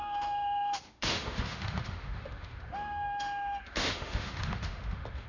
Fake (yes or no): yes